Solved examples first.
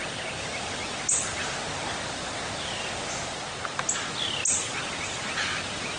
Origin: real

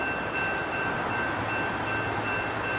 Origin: real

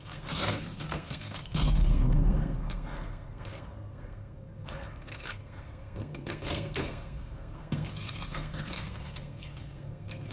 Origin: fake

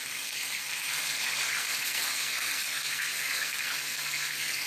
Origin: fake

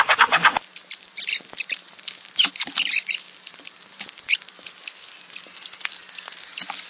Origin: real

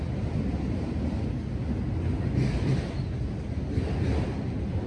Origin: real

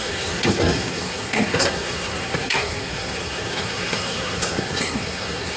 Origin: fake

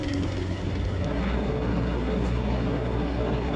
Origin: fake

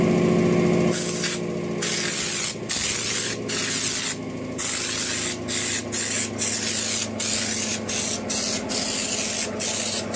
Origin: real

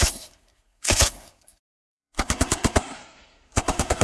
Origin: fake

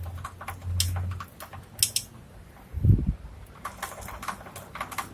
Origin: real